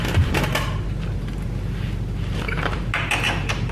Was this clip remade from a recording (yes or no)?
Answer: no